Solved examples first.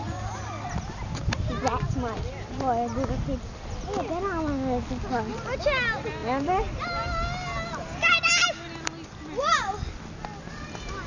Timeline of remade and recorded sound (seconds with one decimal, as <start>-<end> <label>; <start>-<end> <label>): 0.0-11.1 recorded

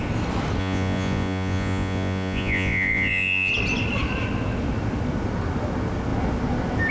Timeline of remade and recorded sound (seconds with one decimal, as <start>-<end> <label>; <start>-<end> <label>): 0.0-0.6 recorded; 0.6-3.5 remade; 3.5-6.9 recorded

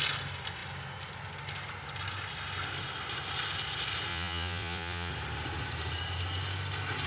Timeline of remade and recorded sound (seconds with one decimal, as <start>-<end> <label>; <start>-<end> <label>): 0.0-4.1 recorded; 4.1-5.1 remade; 5.1-7.1 recorded

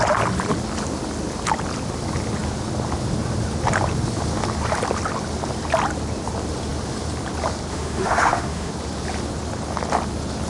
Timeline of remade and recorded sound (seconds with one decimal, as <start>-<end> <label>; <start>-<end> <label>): 0.0-7.7 recorded; 7.7-8.7 remade; 8.7-10.5 recorded

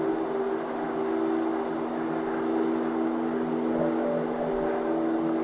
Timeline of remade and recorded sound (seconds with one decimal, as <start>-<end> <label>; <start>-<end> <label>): 0.0-5.4 recorded

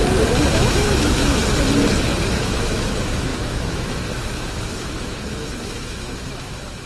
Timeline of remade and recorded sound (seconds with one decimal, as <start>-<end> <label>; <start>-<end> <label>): 0.0-0.5 recorded; 0.5-1.4 remade; 1.4-2.3 recorded; 2.3-6.9 remade

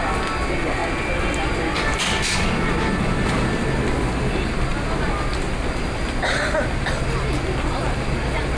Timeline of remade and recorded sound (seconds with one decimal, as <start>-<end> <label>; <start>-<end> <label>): 0.0-8.6 recorded

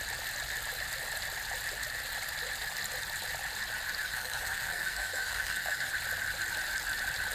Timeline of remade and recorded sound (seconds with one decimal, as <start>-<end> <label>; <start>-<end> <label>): 0.0-4.0 recorded; 4.0-5.9 remade; 5.9-7.3 recorded